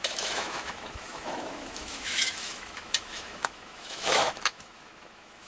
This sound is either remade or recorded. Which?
remade